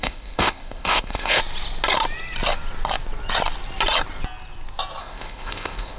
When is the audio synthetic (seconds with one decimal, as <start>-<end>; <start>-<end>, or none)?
0.0-1.4; 5.0-6.0